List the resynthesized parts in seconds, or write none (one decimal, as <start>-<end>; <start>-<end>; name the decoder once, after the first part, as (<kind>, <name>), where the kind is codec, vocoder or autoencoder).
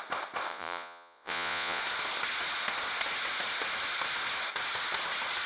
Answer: 0.5-1.8 (vocoder, Vocos)